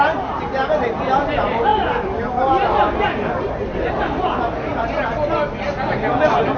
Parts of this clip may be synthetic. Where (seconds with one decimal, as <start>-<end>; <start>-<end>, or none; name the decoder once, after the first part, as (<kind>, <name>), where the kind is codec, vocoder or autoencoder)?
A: 0.0-4.7 (vocoder, BigVGAN v2)